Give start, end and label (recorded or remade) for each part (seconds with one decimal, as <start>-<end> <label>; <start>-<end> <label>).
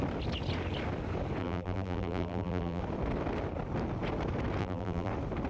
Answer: 0.0-1.4 recorded; 1.4-2.8 remade; 2.8-4.6 recorded; 4.6-5.1 remade; 5.1-5.5 recorded